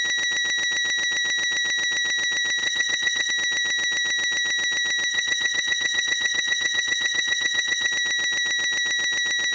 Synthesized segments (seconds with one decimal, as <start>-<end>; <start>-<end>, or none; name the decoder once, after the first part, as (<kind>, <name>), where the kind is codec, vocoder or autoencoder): 2.6-3.3 (vocoder, HiFi-GAN); 5.1-7.9